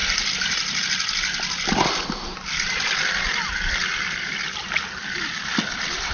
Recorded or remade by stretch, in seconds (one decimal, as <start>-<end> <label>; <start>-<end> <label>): 0.0-3.9 remade; 3.9-5.0 recorded; 5.0-6.1 remade